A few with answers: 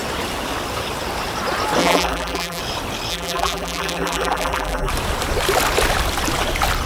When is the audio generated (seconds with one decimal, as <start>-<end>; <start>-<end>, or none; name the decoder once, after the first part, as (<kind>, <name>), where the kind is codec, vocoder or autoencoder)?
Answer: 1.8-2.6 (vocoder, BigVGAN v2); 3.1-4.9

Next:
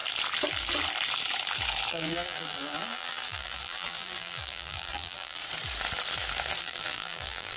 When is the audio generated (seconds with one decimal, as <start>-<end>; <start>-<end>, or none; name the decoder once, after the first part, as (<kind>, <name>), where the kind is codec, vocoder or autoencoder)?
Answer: 1.9-5.4 (vocoder, BigVGAN v2); 6.6-7.6

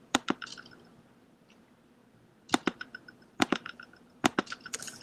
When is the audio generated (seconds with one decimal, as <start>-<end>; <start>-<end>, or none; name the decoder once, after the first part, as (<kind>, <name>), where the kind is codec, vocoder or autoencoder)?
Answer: 0.0-0.5 (vocoder, BigVGAN v2); 1.2-2.0; 3.3-5.0

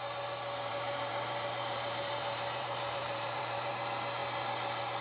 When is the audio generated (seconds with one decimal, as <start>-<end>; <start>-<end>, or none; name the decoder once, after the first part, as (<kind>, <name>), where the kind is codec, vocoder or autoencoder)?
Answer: 0.7-3.7 (vocoder, BigVGAN v2)

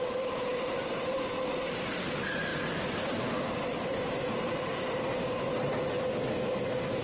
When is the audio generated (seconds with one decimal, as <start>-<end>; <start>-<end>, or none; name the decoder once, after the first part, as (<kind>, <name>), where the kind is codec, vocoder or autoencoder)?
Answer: 0.5-1.5 (vocoder, BigVGAN v2); 2.5-4.9

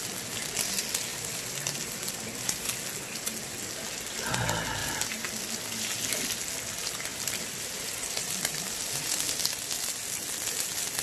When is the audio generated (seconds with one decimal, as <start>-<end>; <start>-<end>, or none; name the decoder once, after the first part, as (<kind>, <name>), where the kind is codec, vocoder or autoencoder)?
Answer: 1.1-2.2 (vocoder, BigVGAN v2); 4.8-5.4; 7.1-8.8

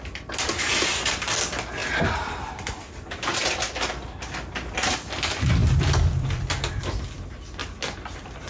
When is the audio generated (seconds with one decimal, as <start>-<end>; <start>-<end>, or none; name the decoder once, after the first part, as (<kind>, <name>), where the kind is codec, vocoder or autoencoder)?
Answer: 1.8-2.8 (vocoder, BigVGAN v2); 5.6-6.7; 7.6-8.5